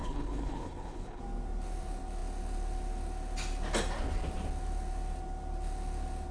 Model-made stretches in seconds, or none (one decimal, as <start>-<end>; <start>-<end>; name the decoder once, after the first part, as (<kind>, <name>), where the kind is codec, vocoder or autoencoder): 0.0-1.2 (codec, HILCodec)

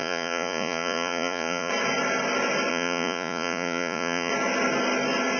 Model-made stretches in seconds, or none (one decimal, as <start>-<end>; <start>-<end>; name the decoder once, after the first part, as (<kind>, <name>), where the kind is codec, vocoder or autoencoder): 0.0-1.7 (vocoder, Vocos); 2.7-4.3

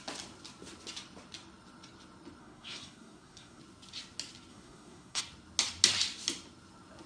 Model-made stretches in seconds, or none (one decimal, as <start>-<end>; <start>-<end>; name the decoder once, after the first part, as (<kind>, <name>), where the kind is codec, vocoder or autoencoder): 2.4-3.6 (codec, SNAC); 4.5-5.2

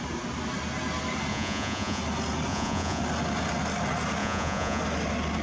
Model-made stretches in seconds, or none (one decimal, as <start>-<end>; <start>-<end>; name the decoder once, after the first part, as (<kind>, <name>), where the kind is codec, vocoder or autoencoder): 1.3-2.0 (vocoder, Vocos); 2.5-3.0; 4.2-4.8

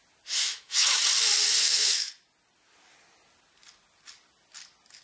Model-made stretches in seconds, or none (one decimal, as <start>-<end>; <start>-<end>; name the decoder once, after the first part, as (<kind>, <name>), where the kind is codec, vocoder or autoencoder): 0.4-1.0 (autoencoder, DAC-VAE); 1.6-2.1

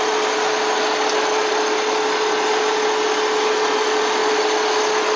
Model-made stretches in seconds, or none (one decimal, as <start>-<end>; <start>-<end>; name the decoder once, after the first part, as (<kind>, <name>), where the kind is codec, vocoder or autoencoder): none

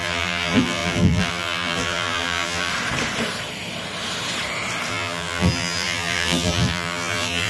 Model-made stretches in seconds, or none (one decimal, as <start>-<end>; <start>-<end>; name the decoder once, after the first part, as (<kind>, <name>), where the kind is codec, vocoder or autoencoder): 0.0-2.7 (vocoder, BigVGAN v2); 4.9-7.5

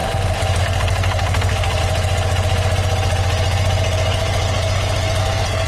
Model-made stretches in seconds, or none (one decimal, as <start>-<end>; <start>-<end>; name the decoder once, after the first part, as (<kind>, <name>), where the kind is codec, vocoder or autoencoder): 0.6-1.8 (codec, SNAC); 5.2-5.7